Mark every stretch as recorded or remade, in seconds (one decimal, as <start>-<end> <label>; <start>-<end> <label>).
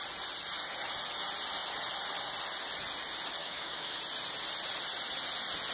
0.0-3.4 recorded; 3.4-4.0 remade; 4.0-5.7 recorded